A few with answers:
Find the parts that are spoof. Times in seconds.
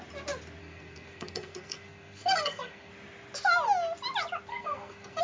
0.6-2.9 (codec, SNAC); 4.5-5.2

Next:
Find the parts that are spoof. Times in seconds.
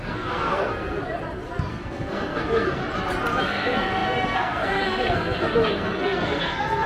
0.0-1.0 (codec, SNAC); 1.7-2.8; 3.4-6.9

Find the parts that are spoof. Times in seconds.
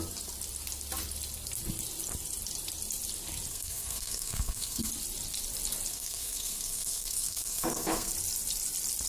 3.5-4.9 (codec, SNAC); 5.9-8.1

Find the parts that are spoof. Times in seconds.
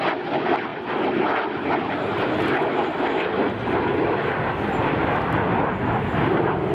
none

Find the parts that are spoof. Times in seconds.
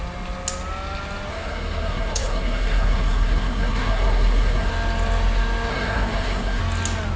1.3-4.7 (codec, SNAC); 5.7-6.6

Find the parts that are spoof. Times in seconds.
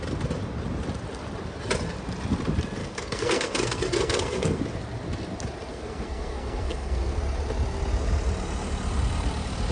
2.8-4.6 (codec, SNAC); 5.7-7.2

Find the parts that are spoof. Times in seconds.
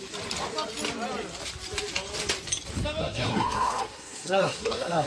3.0-5.1 (codec, SNAC)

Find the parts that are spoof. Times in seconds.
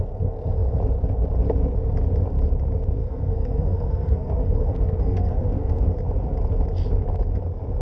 3.0-5.8 (codec, SNAC)